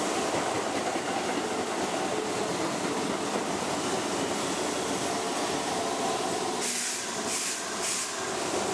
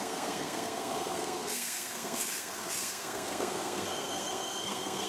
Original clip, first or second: first